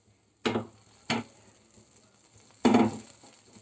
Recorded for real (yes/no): yes